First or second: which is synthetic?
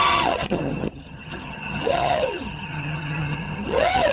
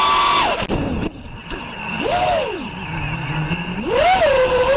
first